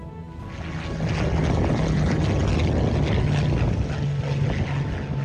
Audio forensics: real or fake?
real